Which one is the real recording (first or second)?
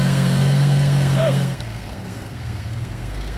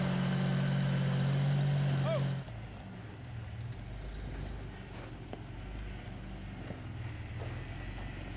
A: second